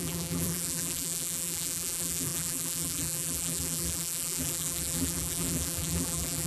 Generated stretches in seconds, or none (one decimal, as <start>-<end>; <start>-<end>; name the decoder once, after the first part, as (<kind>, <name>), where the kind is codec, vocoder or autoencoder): 0.0-6.5 (vocoder, BigVGAN v2)